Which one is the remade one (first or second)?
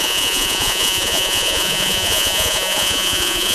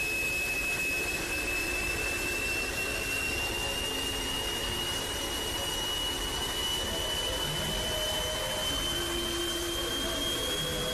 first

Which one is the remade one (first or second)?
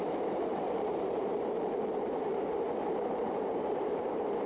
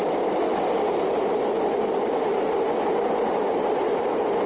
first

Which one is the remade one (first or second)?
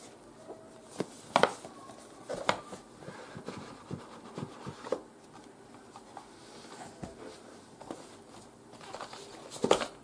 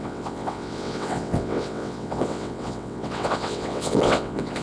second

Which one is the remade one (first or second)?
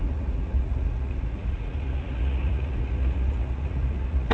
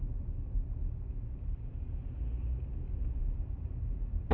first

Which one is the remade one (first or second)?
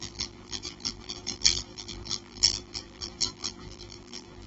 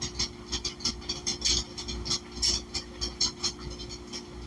first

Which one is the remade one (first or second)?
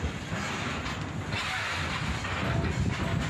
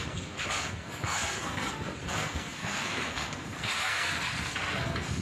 second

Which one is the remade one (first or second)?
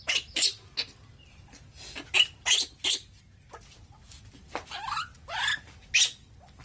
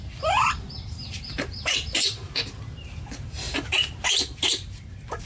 second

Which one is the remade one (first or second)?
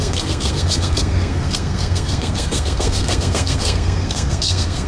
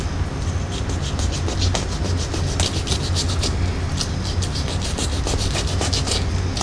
first